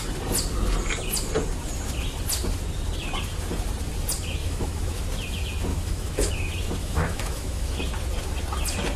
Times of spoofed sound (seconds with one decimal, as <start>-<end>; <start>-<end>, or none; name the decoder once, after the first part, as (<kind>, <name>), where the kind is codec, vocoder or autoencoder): 4.4-5.0 (autoencoder, DAC-VAE); 5.7-6.3; 6.8-7.8